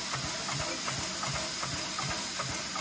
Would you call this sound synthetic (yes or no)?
no